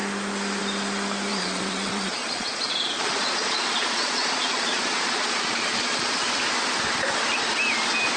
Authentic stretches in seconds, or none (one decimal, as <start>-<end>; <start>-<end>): 0.0-1.3; 6.2-8.2